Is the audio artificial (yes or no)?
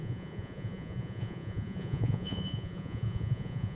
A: yes